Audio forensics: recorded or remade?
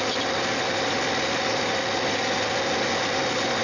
recorded